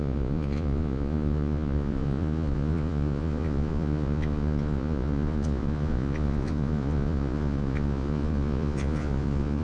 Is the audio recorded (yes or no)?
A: no